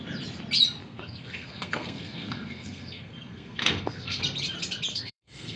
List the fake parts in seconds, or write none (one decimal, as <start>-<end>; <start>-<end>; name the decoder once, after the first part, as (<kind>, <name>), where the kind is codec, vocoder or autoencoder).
0.8-4.2 (codec, SNAC); 4.9-5.6